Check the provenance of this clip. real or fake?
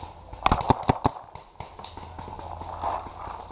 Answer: real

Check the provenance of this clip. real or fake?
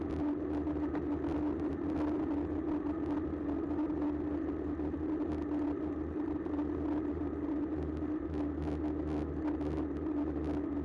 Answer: real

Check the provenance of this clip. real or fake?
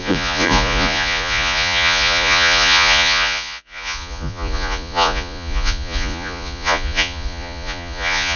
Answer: fake